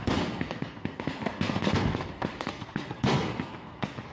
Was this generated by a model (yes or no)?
yes